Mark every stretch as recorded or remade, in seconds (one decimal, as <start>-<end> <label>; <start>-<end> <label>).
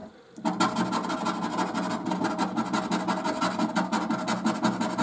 0.0-5.0 recorded